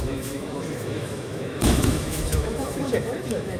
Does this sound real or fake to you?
fake